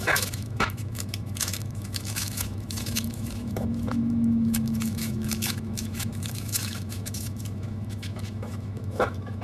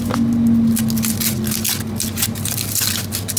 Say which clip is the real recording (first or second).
second